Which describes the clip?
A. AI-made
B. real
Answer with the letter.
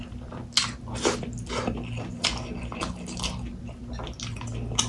B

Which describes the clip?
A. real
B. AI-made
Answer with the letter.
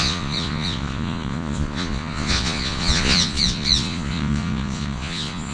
B